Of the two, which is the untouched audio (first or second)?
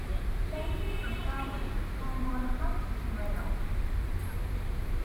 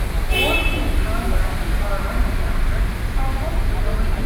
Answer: second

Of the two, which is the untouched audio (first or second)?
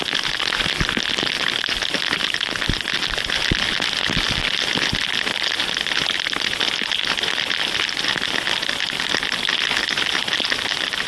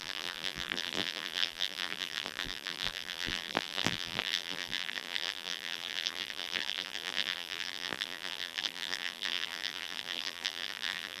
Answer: first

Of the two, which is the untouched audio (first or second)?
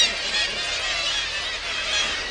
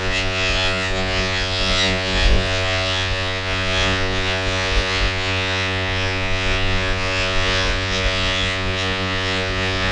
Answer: first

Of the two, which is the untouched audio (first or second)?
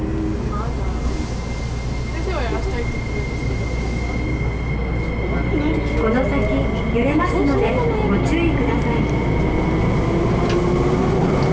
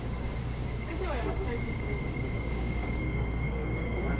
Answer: first